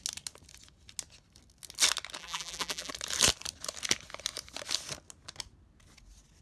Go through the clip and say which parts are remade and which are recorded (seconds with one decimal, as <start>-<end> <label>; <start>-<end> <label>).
0.0-2.2 recorded; 2.2-2.9 remade; 2.9-6.4 recorded